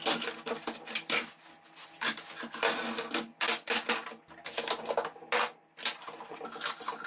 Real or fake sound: real